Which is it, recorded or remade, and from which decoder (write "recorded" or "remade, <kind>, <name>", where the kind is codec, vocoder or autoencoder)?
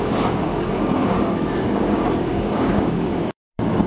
remade, codec, DAC